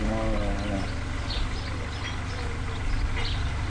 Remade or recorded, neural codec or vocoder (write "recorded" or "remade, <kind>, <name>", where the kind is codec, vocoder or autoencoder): recorded